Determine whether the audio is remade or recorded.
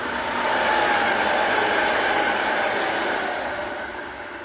recorded